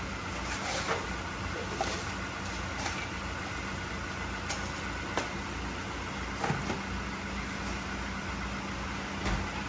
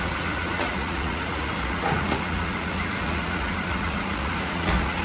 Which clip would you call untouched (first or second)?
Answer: first